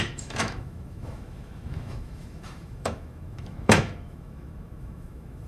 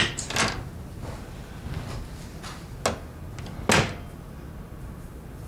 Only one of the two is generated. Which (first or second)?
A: first